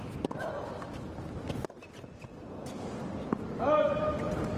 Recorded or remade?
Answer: recorded